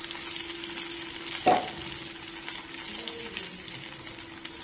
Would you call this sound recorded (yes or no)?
yes